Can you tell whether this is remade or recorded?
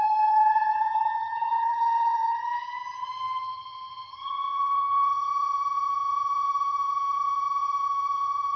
remade